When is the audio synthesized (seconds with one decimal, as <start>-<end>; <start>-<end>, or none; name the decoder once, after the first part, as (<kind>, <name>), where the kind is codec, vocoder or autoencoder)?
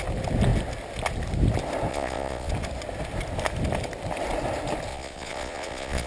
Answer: 1.9-2.5 (vocoder, Vocos); 4.9-6.1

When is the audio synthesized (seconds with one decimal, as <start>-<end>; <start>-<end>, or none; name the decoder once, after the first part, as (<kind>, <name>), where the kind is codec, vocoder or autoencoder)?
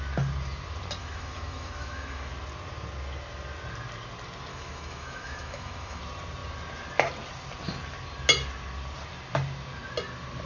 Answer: 1.0-2.3 (autoencoder, DAC-VAE); 4.5-6.0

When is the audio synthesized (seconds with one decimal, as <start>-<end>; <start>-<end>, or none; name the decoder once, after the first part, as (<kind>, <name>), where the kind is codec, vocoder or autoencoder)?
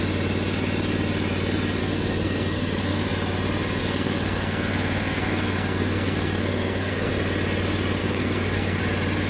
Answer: 1.8-3.1 (codec, SNAC); 3.8-7.1; 8.0-8.8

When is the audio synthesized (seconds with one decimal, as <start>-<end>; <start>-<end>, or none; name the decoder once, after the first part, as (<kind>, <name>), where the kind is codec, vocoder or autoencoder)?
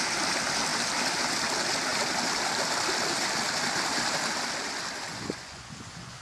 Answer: 5.1-6.2 (vocoder, Vocos)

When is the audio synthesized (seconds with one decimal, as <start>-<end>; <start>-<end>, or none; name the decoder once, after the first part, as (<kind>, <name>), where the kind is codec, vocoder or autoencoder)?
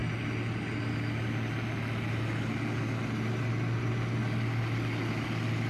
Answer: none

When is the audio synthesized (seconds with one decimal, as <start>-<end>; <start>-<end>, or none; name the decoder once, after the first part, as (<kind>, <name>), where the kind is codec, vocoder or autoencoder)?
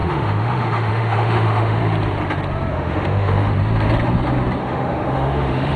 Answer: 0.0-1.8 (autoencoder, DAC-VAE); 2.7-3.5; 4.6-5.8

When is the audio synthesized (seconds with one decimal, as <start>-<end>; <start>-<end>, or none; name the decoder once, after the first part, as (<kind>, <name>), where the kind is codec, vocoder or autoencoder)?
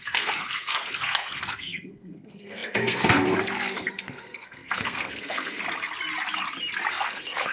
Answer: 0.0-5.6 (codec, SNAC); 6.9-7.5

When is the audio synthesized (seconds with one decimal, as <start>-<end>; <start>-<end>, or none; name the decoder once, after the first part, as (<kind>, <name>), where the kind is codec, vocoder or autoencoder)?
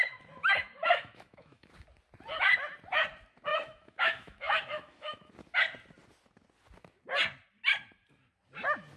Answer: 0.4-1.7 (autoencoder, DAC-VAE); 3.5-5.3